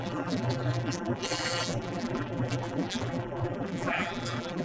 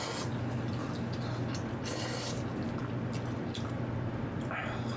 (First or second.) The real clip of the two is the second